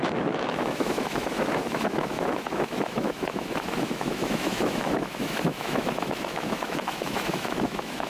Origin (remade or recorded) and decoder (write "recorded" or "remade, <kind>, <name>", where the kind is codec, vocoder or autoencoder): remade, autoencoder, DAC-VAE